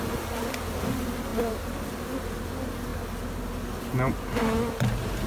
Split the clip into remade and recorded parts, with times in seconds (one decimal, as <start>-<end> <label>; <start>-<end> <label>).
0.0-5.3 recorded